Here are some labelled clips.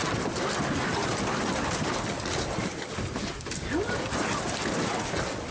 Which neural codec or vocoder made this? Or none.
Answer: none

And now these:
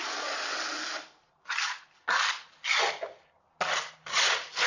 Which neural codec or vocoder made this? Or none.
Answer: none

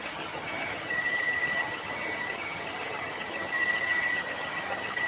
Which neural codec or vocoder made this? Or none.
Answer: vocoder, HiFi-GAN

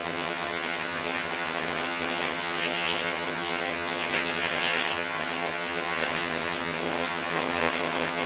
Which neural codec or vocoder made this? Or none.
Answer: vocoder, HiFi-GAN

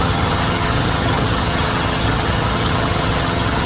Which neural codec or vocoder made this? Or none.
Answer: vocoder, HiFi-GAN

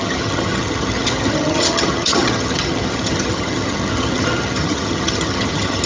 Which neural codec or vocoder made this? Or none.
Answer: vocoder, HiFi-GAN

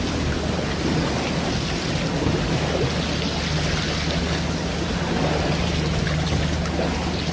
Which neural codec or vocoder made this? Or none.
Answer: none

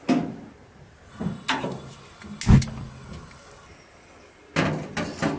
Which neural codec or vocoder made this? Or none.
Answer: none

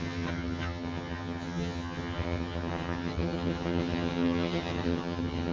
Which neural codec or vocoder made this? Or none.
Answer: vocoder, HiFi-GAN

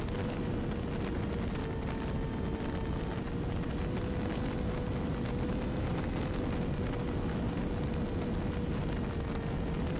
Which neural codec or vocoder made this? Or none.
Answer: none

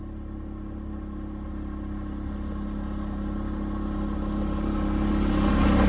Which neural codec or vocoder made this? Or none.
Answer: none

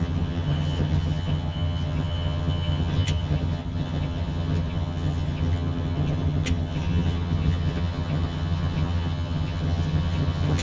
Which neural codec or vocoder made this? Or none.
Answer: vocoder, HiFi-GAN